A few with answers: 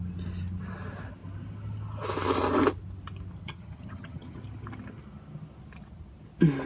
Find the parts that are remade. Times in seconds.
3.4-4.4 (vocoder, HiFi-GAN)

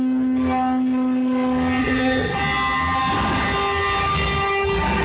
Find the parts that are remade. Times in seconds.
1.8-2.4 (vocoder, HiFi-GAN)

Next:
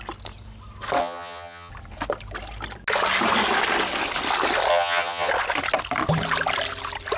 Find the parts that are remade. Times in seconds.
1.0-1.7 (vocoder, HiFi-GAN); 4.7-5.3

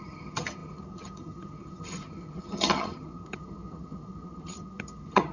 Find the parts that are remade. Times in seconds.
0.0-5.3 (vocoder, HiFi-GAN)

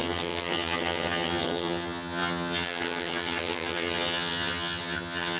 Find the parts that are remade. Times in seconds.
0.0-5.4 (vocoder, HiFi-GAN)

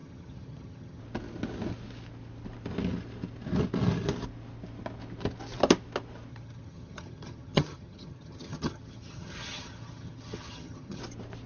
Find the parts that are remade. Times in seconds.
0.0-1.0 (vocoder, HiFi-GAN); 6.3-11.0

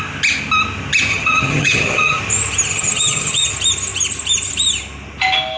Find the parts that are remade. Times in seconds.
1.1-2.2 (vocoder, HiFi-GAN); 2.7-3.5

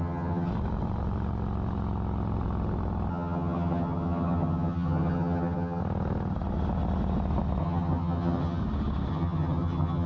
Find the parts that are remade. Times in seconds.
0.0-0.5 (vocoder, HiFi-GAN); 3.1-5.8; 7.6-8.6; 9.1-10.1